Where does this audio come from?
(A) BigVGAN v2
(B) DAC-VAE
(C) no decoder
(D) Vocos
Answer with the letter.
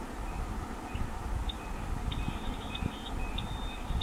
C